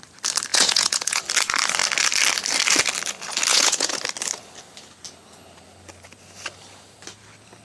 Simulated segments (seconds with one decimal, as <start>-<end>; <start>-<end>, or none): 0.5-1.2; 3.5-4.0